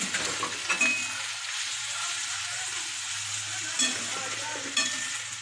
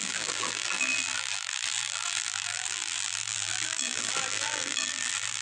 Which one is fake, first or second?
second